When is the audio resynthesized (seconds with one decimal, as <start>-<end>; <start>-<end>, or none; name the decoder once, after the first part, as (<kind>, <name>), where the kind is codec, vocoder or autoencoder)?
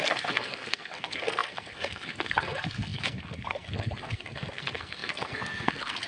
0.0-6.1 (codec, SNAC)